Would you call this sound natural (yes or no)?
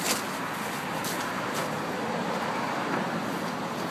yes